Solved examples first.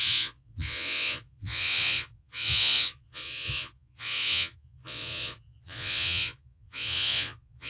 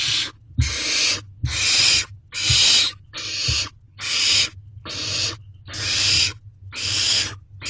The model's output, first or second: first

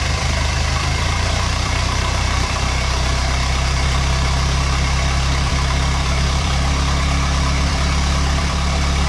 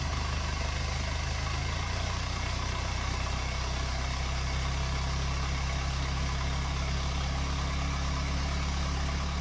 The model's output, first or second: first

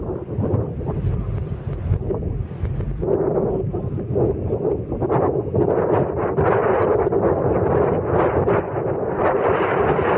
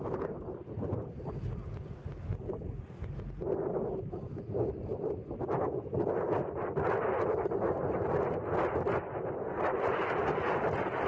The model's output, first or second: first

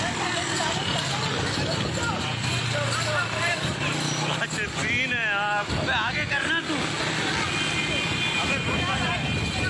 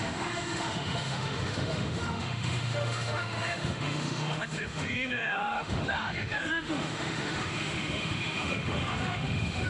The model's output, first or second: second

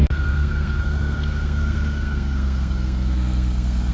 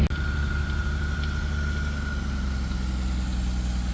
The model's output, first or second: first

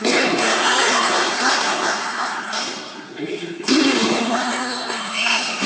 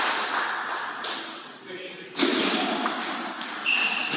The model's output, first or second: first